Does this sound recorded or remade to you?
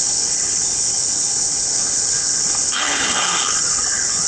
remade